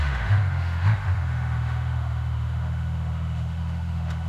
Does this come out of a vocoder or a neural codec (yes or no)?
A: yes